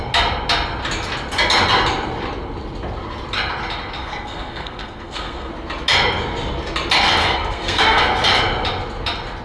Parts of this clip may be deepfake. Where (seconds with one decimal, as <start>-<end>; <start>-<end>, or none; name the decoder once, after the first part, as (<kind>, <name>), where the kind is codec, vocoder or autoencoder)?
4.0-5.5 (codec, SNAC); 7.2-8.0